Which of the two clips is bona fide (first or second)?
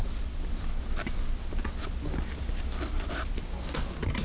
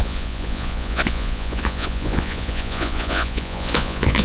first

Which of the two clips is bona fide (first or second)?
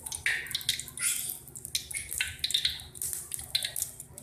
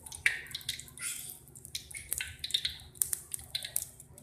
first